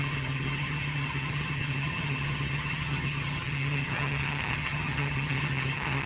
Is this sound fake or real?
fake